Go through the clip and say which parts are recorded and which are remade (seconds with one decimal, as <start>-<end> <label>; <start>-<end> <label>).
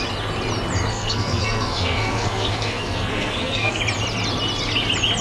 0.0-0.9 recorded; 0.9-3.8 remade; 3.8-5.2 recorded